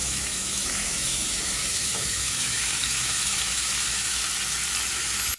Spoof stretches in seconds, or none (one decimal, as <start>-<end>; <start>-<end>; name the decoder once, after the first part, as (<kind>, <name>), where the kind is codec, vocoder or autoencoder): 0.0-4.2 (autoencoder, DAC-VAE); 4.9-5.4